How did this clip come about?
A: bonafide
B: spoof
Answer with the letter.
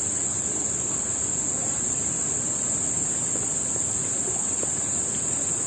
A